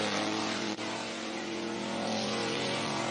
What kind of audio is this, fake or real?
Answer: fake